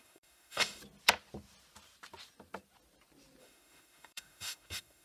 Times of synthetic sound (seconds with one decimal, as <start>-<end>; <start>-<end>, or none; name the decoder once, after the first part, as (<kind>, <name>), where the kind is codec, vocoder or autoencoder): 0.0-0.8 (autoencoder, DAC-VAE); 3.4-5.0

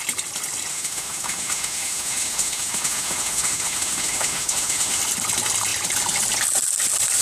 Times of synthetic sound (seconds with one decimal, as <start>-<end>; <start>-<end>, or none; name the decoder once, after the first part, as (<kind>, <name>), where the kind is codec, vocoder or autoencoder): 0.7-5.0 (autoencoder, DAC-VAE)

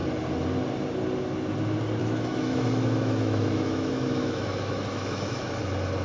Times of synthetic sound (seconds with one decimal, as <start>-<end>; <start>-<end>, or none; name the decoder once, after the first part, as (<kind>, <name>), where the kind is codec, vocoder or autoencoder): 2.0-5.6 (autoencoder, DAC-VAE)

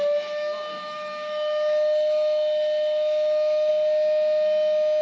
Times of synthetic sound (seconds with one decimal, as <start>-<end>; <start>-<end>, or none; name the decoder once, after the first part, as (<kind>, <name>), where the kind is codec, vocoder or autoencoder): 0.7-3.7 (autoencoder, DAC-VAE)

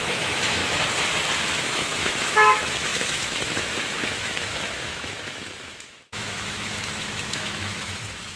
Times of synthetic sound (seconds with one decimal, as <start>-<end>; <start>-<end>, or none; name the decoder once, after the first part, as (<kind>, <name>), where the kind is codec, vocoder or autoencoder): 0.0-0.6 (autoencoder, DAC-VAE); 1.5-8.4

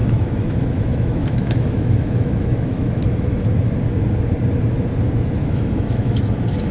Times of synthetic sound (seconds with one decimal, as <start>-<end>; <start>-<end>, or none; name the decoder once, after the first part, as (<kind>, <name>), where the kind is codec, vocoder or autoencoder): 0.0-3.4 (autoencoder, DAC-VAE); 5.4-6.2

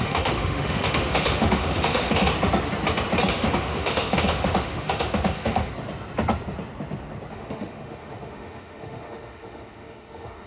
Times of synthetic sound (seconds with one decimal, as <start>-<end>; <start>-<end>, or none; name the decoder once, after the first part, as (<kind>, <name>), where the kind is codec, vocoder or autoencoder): 0.0-2.3 (autoencoder, DAC-VAE); 3.3-5.7; 7.3-10.5

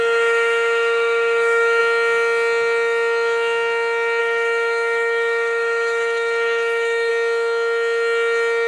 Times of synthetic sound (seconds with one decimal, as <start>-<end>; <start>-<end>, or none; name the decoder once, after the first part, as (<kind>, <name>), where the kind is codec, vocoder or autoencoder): 0.0-1.8 (autoencoder, DAC-VAE); 4.2-7.1